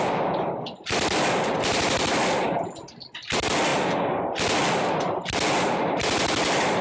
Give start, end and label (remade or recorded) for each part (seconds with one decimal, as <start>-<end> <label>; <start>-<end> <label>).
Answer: 0.0-6.8 recorded